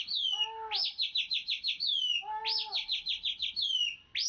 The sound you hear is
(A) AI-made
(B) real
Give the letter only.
B